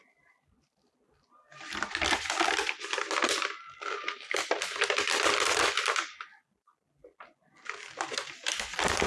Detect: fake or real fake